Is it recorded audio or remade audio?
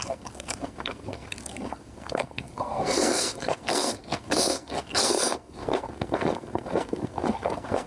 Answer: remade